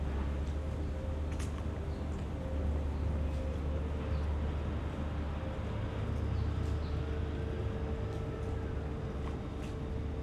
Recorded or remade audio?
recorded